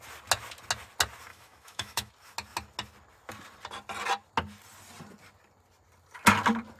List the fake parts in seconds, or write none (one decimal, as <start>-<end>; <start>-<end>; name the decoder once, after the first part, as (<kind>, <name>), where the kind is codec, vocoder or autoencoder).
1.3-2.1 (autoencoder, DAC-VAE)